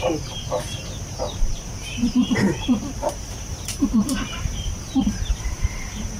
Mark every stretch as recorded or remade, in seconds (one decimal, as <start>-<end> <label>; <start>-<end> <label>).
0.0-6.2 remade